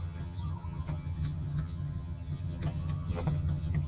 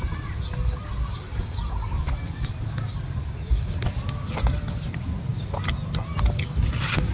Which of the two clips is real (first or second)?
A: second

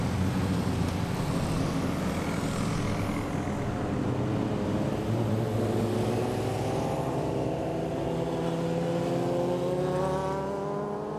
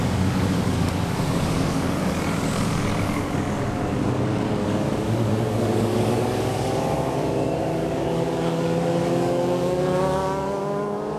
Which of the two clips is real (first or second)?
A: first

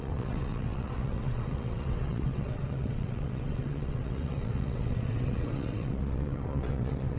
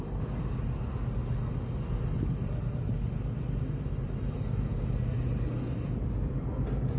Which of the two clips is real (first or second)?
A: second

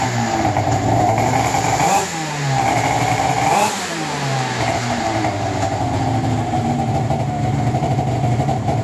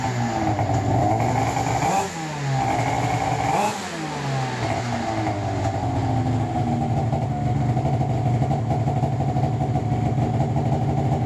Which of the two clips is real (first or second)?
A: second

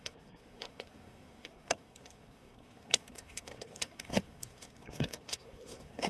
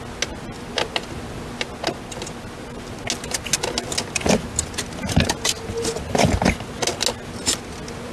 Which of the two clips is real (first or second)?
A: second